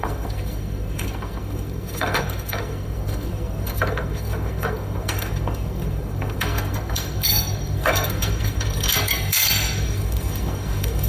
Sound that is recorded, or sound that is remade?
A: remade